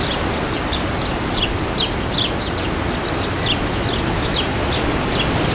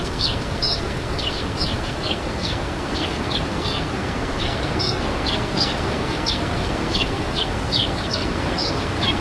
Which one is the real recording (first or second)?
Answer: first